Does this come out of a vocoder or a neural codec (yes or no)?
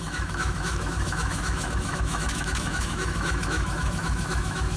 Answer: yes